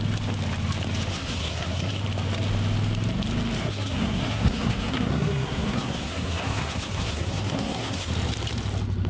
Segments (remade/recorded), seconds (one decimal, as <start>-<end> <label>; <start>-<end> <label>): 0.0-1.1 recorded; 1.1-2.0 remade; 2.0-3.6 recorded; 3.6-8.1 remade; 8.1-9.1 recorded